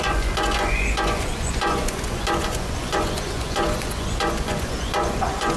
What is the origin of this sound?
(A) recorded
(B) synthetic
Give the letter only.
B